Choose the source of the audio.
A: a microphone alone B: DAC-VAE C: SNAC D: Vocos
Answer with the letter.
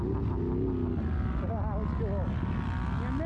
A